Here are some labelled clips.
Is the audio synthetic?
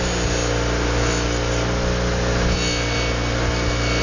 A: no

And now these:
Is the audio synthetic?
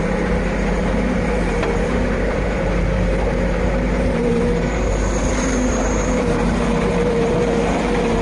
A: yes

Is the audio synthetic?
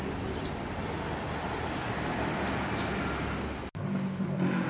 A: no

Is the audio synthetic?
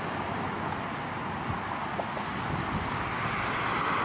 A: no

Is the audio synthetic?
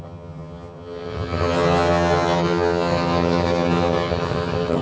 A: yes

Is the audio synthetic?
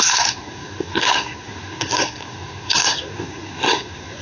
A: yes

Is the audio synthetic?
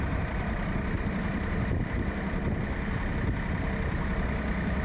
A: no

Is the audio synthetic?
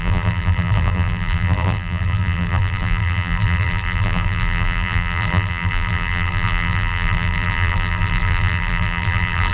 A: yes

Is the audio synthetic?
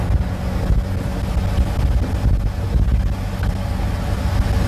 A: no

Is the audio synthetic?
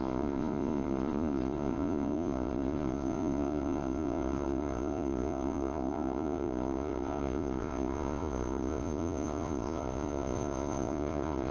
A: yes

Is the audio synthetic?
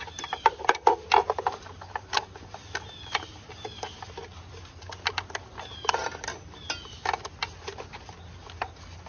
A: no